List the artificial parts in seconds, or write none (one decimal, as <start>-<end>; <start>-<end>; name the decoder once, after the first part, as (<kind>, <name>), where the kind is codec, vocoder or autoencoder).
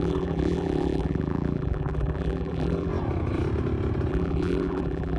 0.0-2.9 (vocoder, BigVGAN v2); 4.1-5.2